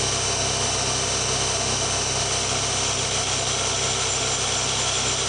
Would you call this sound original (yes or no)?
yes